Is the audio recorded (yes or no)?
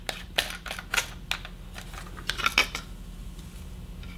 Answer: yes